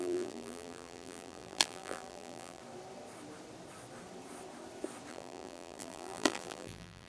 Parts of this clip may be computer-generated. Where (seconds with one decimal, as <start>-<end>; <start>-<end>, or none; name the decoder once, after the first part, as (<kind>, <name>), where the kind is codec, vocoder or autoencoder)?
0.0-2.6 (vocoder, BigVGAN v2); 5.1-7.1